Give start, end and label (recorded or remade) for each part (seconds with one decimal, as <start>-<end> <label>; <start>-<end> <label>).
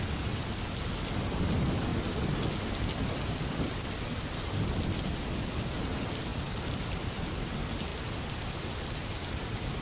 0.0-9.8 recorded